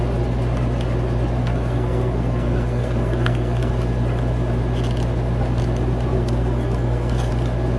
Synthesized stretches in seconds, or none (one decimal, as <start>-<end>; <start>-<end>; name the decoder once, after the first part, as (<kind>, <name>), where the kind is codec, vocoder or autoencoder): 1.4-3.7 (codec, SNAC); 6.1-7.3